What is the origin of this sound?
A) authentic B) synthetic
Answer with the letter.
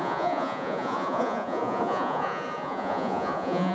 B